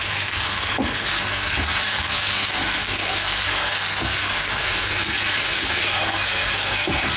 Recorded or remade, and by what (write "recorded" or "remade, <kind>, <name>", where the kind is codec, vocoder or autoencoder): remade, codec, SNAC